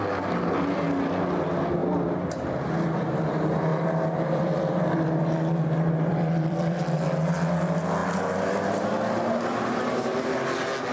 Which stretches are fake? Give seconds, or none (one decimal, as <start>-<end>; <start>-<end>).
1.8-3.3; 3.7-6.8; 8.0-8.5